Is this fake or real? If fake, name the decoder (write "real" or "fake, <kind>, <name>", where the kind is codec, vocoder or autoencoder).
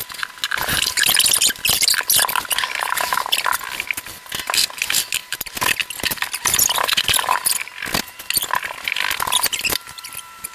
real